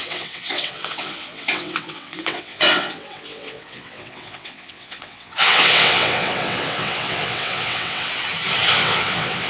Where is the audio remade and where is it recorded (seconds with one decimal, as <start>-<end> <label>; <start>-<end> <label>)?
0.0-8.1 remade; 8.1-8.7 recorded; 8.7-9.5 remade

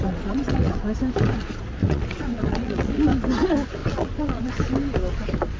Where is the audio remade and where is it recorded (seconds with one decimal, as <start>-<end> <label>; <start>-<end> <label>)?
0.0-0.8 remade; 0.8-1.8 recorded; 1.8-2.9 remade; 2.9-3.8 recorded; 3.8-4.5 remade; 4.5-5.6 recorded

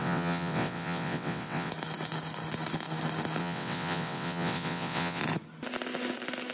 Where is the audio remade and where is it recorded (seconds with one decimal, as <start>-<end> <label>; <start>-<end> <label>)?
0.0-1.7 remade; 1.7-3.4 recorded; 3.4-5.2 remade; 5.2-6.5 recorded

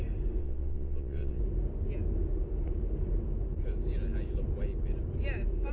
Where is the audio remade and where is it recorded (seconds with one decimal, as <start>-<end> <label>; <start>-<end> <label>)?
0.0-0.4 recorded; 0.4-1.4 remade; 1.4-5.7 recorded

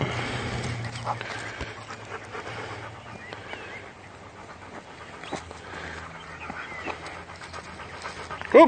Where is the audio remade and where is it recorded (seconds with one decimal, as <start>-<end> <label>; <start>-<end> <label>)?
0.0-8.7 recorded

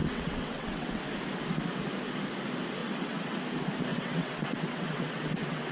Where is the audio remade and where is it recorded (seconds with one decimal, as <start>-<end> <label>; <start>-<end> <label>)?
0.0-1.0 remade; 1.0-2.8 recorded; 2.8-3.4 remade; 3.4-3.9 recorded; 3.9-5.7 remade

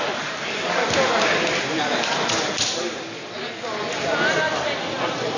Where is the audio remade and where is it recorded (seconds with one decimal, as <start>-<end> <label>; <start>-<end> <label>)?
0.0-5.4 recorded

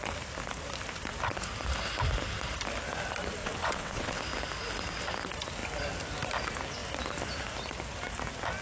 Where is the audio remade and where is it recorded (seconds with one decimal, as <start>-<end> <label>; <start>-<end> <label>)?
0.0-3.4 recorded; 3.4-4.2 remade; 4.2-8.6 recorded